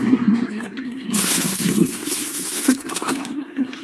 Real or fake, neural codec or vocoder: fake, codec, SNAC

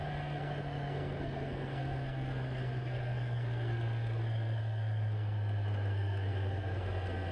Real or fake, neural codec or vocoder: fake, codec, SNAC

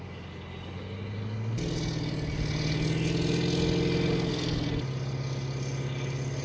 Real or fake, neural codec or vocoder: real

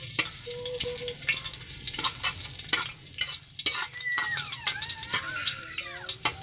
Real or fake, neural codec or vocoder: real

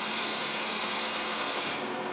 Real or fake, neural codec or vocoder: fake, codec, SNAC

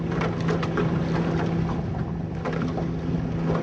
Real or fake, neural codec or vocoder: real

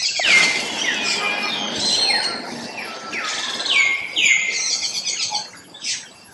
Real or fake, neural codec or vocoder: real